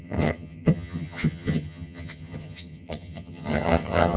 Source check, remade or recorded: remade